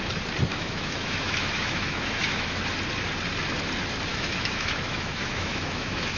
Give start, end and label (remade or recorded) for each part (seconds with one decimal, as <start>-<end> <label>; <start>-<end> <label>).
0.0-0.5 recorded; 0.5-2.6 remade; 2.6-4.1 recorded; 4.1-6.2 remade